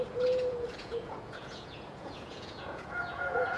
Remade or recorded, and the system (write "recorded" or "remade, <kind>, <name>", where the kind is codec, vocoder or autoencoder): remade, vocoder, Vocos